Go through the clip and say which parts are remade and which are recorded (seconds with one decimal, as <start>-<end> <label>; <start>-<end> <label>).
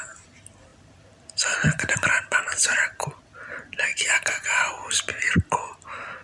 0.0-0.7 recorded; 0.7-3.2 remade; 3.2-3.9 recorded; 3.9-4.9 remade; 4.9-6.2 recorded